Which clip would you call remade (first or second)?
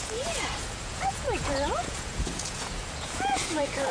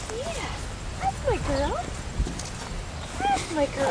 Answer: first